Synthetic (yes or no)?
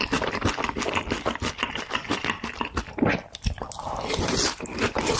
no